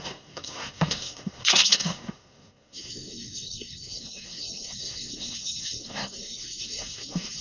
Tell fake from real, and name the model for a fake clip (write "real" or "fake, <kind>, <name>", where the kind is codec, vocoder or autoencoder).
fake, codec, SNAC